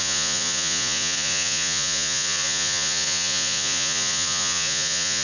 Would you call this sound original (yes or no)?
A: no